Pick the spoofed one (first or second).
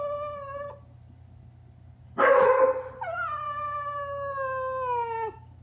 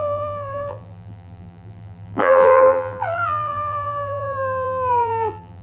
second